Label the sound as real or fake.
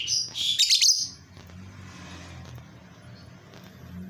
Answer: real